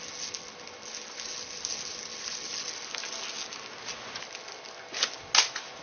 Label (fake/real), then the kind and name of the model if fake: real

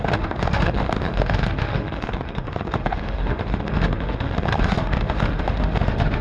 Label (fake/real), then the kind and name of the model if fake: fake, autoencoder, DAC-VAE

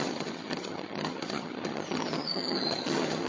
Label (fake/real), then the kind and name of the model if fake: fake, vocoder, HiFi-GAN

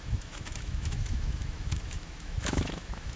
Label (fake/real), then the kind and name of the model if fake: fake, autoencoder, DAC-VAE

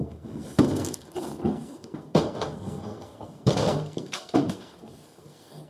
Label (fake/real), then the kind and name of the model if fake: fake, codec, SNAC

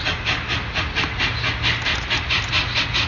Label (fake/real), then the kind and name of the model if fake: real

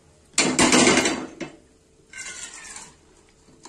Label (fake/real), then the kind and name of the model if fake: real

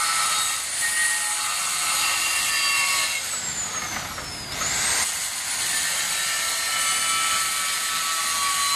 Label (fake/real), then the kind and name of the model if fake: real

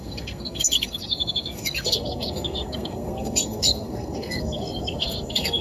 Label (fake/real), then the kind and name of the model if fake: fake, codec, SNAC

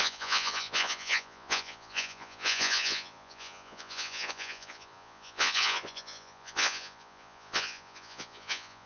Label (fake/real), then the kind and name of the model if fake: fake, vocoder, Vocos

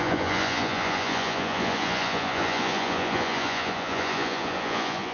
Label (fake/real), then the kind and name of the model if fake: fake, vocoder, Vocos